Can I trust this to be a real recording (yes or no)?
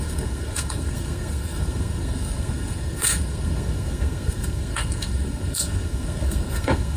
no